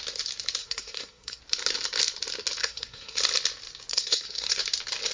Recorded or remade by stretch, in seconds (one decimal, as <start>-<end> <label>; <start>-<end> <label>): 0.0-0.6 recorded; 0.6-1.4 remade; 1.4-2.6 recorded; 2.6-3.2 remade; 3.2-3.9 recorded; 3.9-4.6 remade; 4.6-5.1 recorded